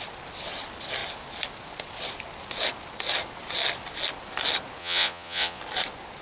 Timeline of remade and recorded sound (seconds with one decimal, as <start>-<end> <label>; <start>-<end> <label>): 0.0-4.8 recorded; 4.8-5.6 remade; 5.6-6.2 recorded